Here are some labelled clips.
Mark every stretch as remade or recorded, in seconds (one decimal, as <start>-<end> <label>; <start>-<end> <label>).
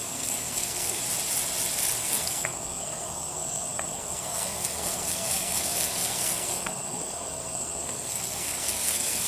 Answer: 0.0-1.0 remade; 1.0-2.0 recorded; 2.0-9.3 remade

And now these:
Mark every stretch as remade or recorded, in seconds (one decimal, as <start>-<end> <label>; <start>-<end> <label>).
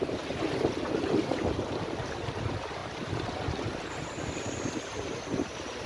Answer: 0.0-5.9 recorded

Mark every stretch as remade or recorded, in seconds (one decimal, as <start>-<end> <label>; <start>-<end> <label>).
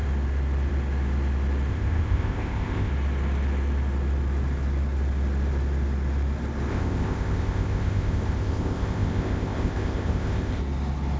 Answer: 0.0-1.7 recorded; 1.7-2.9 remade; 2.9-6.7 recorded; 6.7-10.6 remade; 10.6-11.2 recorded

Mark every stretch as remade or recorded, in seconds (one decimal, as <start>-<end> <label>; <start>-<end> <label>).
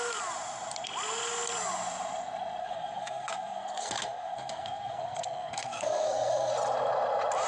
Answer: 0.0-2.6 recorded; 2.6-6.5 remade; 6.5-7.5 recorded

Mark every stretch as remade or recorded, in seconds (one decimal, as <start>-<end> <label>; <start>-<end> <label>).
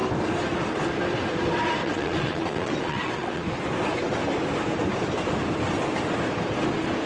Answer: 0.0-1.8 recorded; 1.8-3.4 remade; 3.4-7.1 recorded